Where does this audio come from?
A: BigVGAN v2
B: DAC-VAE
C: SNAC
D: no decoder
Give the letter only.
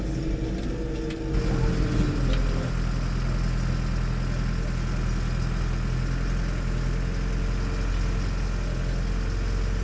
D